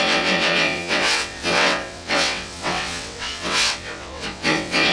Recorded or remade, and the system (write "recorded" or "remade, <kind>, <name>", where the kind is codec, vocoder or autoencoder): remade, vocoder, WaveNeXt